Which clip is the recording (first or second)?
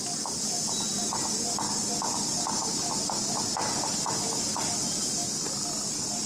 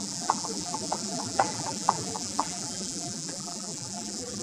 first